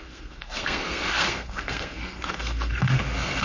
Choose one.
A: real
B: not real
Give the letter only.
B